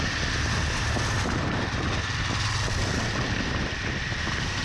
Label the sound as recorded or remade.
recorded